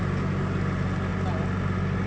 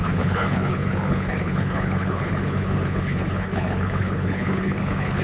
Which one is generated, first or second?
second